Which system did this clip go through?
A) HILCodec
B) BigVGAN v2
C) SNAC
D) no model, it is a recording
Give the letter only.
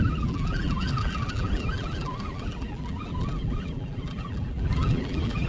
B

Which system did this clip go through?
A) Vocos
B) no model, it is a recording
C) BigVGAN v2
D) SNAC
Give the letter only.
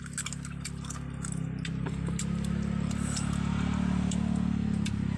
B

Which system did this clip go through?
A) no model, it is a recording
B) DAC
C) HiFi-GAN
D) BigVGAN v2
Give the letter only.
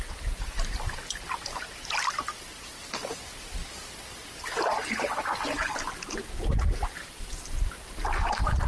A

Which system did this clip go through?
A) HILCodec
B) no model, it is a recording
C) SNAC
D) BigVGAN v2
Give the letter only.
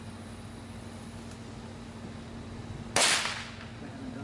B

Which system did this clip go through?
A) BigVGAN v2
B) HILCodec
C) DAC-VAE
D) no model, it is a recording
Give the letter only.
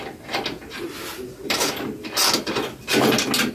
D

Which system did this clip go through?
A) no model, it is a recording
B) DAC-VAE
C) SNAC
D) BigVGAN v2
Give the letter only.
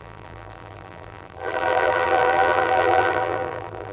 D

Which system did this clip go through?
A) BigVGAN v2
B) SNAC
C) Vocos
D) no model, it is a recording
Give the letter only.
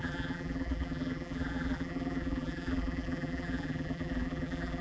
A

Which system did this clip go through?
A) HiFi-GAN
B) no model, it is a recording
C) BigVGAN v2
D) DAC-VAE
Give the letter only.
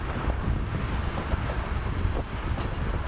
B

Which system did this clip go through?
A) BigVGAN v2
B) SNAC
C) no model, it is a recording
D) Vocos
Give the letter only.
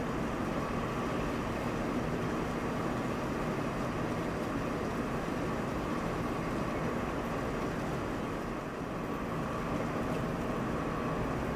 C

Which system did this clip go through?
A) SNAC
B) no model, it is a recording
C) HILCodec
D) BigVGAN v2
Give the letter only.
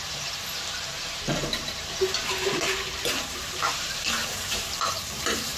D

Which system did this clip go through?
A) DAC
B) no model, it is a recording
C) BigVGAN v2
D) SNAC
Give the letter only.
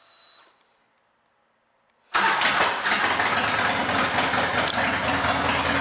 B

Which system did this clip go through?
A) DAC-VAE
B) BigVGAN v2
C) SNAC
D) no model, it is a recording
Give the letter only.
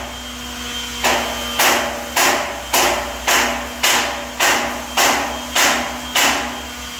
D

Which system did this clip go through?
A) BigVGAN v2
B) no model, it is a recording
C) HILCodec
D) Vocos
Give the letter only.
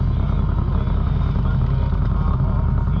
B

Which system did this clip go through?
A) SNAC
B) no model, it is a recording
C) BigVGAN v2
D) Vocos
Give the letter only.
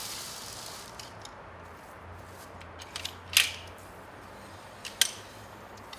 B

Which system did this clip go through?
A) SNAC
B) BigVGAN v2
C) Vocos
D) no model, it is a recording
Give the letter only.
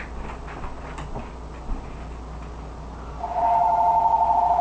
D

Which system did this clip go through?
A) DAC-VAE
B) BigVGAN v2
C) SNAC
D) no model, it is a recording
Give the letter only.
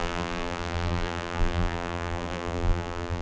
B